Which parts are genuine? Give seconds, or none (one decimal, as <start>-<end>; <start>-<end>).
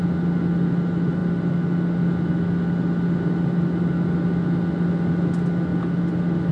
0.0-6.5